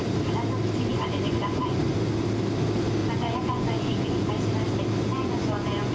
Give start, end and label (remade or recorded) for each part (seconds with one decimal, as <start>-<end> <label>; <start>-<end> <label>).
0.0-0.9 recorded; 0.9-1.8 remade; 1.8-3.0 recorded; 3.0-4.3 remade; 4.3-5.1 recorded; 5.1-5.9 remade